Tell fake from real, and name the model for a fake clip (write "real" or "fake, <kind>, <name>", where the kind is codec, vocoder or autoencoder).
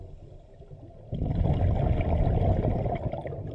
real